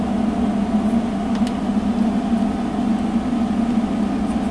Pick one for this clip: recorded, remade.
recorded